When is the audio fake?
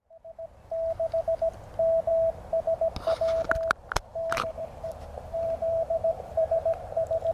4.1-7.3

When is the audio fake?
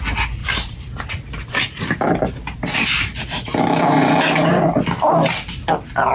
0.4-4.1; 4.7-5.3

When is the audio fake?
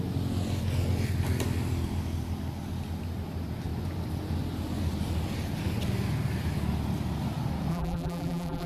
7.7-8.7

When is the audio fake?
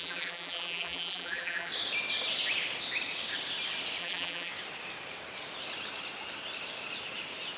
0.0-1.7; 4.0-4.5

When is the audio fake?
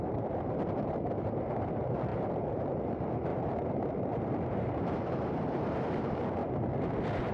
0.0-6.4